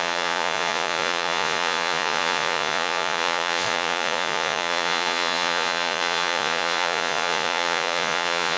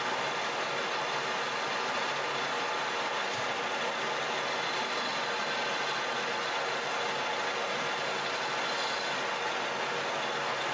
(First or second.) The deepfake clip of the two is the first